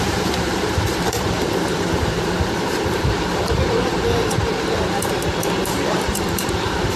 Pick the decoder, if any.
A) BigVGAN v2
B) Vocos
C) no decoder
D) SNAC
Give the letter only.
A